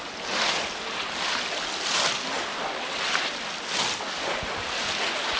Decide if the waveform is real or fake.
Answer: real